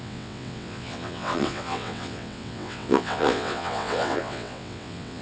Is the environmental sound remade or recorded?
remade